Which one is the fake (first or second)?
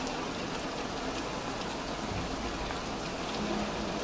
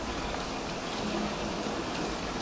second